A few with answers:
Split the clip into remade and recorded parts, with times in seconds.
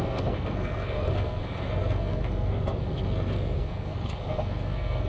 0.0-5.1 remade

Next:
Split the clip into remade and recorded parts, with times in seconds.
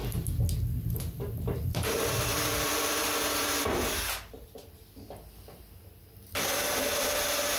0.0-1.6 recorded; 1.6-7.6 remade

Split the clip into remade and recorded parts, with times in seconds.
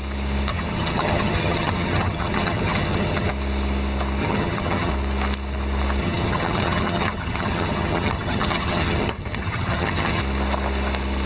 0.0-0.5 recorded; 0.5-3.3 remade; 3.3-4.2 recorded; 4.2-4.9 remade; 4.9-6.0 recorded; 6.0-10.2 remade; 10.2-11.3 recorded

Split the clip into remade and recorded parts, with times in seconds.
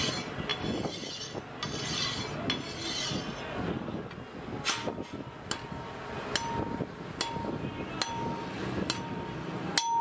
0.0-10.0 recorded